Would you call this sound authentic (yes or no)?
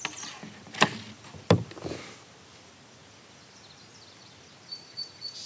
yes